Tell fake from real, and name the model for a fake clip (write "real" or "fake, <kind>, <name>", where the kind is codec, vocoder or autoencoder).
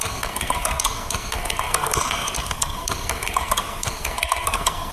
fake, codec, SNAC